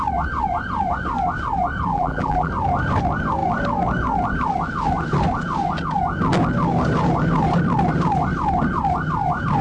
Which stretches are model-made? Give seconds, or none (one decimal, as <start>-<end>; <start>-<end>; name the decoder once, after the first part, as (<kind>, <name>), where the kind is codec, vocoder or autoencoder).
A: 1.9-2.5 (vocoder, BigVGAN v2)